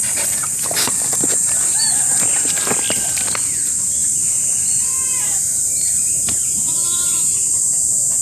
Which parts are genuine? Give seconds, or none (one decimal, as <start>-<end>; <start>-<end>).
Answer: 0.0-4.0; 7.1-8.2